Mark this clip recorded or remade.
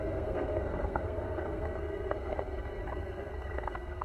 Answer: remade